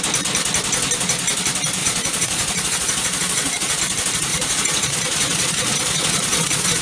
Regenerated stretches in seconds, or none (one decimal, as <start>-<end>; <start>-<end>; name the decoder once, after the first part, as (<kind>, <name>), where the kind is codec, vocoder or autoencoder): 1.8-3.8 (vocoder, Vocos); 4.3-6.8